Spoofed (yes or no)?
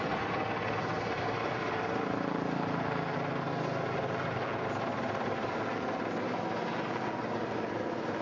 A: no